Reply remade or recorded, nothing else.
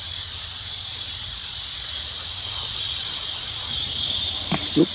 recorded